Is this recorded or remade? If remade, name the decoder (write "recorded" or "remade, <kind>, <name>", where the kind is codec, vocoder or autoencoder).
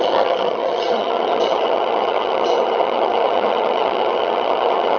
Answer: remade, vocoder, HiFi-GAN